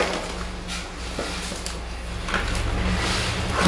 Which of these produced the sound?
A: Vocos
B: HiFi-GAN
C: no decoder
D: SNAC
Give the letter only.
C